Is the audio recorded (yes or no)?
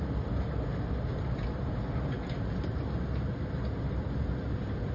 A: yes